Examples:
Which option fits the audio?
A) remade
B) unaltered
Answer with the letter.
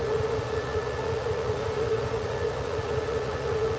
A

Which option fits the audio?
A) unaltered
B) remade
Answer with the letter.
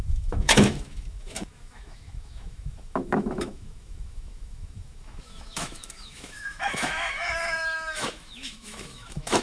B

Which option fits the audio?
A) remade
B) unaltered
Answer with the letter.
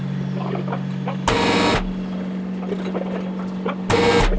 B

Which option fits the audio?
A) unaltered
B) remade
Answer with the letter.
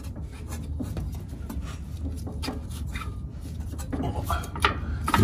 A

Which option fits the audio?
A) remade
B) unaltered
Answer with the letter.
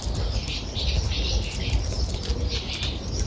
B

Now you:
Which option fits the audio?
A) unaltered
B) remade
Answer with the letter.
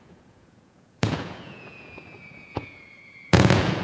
B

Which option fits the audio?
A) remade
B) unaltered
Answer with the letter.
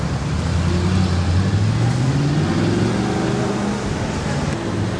B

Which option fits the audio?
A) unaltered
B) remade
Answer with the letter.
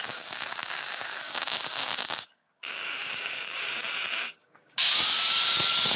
B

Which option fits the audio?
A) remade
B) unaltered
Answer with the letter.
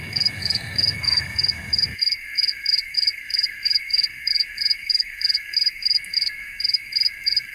A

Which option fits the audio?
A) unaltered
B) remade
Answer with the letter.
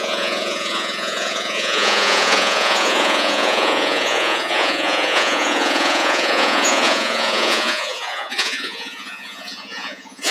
B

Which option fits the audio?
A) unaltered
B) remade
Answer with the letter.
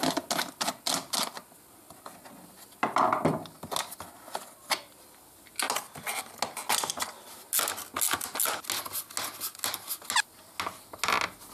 A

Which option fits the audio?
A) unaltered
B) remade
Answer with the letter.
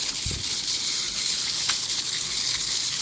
B